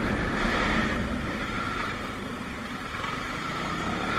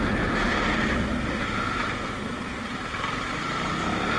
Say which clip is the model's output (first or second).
first